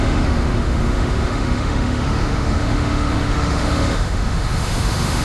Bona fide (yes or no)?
no